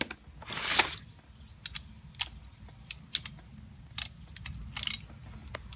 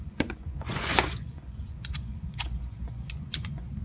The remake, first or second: second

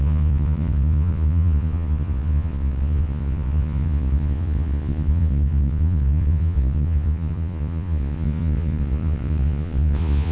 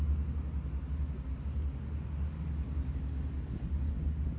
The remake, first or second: first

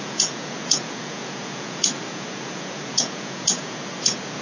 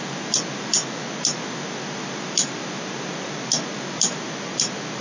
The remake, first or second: first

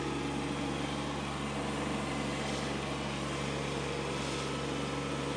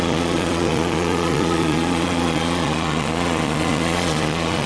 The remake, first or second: second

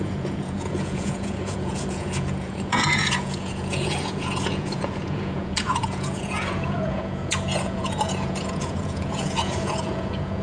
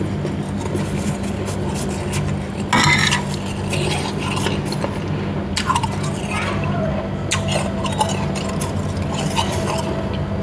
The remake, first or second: first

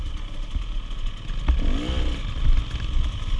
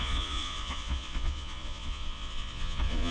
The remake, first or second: second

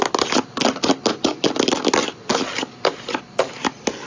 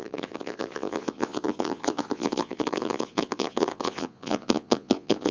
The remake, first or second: second